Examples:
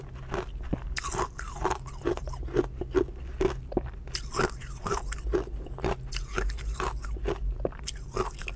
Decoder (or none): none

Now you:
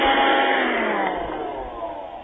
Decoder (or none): none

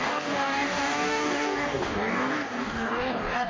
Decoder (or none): codec, DAC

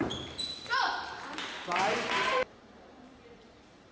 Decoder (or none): vocoder, BigVGAN v2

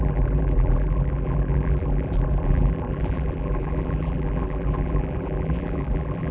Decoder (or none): vocoder, BigVGAN v2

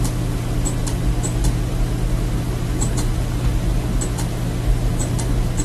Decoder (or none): none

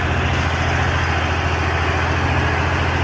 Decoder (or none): none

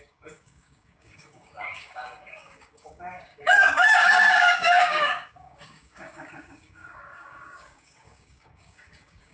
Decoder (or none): codec, DAC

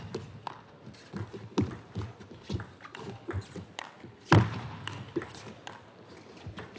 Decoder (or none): none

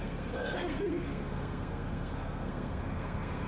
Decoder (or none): codec, SNAC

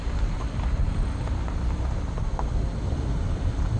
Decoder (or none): none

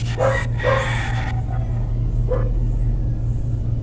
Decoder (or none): none